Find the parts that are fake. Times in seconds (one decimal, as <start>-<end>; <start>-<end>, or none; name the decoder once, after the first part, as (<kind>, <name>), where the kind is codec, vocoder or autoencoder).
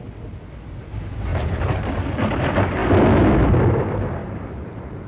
1.3-1.9 (vocoder, BigVGAN v2); 4.2-5.1